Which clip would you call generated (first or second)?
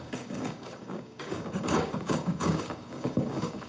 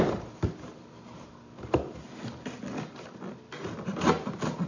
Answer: first